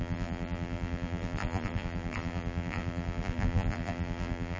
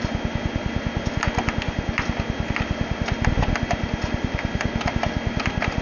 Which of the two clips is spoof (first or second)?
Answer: first